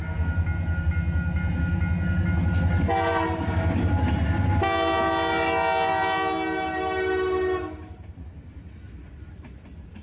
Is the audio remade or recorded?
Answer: recorded